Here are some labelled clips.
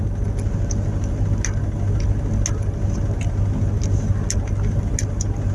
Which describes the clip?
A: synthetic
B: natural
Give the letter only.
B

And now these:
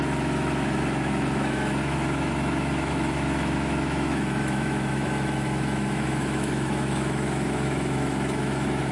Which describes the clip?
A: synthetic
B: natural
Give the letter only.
A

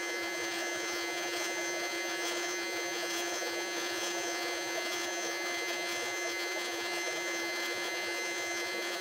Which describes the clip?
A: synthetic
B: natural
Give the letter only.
A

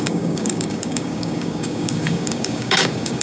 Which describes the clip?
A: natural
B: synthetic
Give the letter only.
B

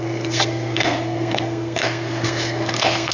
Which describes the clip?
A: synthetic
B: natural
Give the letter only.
A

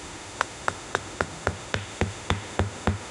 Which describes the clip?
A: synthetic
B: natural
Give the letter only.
A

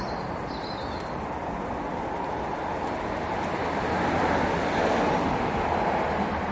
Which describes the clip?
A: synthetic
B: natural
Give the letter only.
B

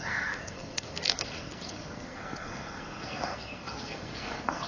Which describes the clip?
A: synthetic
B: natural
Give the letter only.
A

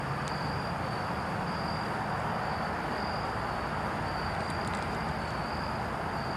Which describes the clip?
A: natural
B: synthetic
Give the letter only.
A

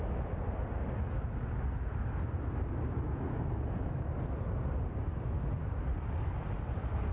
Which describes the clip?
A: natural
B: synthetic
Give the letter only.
A